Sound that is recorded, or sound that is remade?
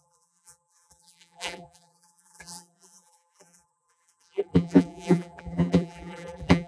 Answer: remade